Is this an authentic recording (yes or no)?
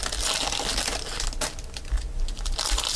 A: yes